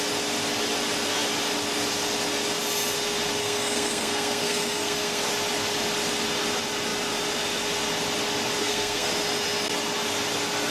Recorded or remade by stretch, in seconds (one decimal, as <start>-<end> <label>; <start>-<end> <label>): 0.0-3.4 recorded; 3.4-5.2 remade; 5.2-8.6 recorded; 8.6-9.1 remade; 9.1-10.7 recorded